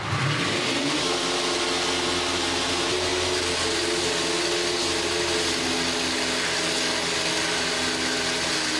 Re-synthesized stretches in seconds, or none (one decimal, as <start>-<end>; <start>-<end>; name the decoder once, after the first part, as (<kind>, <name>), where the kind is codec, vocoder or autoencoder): none